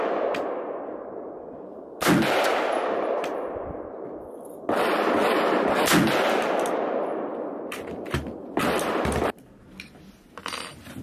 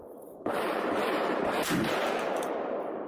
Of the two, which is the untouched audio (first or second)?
first